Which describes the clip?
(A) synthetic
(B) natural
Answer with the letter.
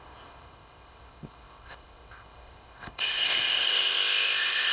A